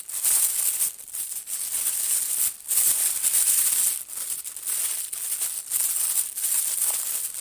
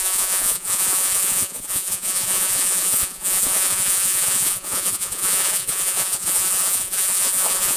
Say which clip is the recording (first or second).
first